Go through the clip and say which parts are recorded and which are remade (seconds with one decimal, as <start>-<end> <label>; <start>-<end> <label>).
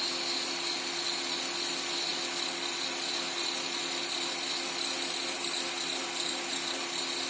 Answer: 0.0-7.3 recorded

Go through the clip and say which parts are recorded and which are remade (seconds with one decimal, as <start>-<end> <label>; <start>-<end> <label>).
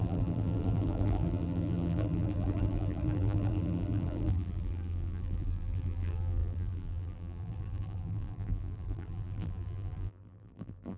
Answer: 0.0-11.0 remade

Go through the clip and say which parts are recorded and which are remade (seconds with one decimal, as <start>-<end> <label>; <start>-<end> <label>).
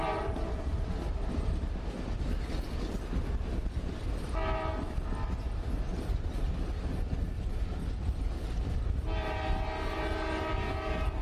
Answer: 0.0-11.2 recorded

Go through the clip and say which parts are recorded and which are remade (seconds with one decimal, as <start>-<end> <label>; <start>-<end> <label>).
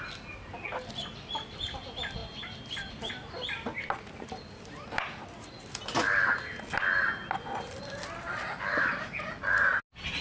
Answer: 0.0-10.2 recorded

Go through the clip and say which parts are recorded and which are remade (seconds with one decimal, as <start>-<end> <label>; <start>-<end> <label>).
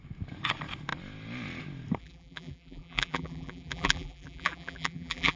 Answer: 0.0-2.0 recorded; 2.0-5.4 remade